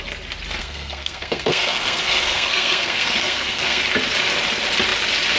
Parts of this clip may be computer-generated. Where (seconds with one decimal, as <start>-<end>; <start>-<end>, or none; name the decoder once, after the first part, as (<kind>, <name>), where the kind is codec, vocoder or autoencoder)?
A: 0.6-3.8 (codec, SNAC)